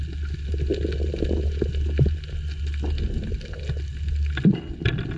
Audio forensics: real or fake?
real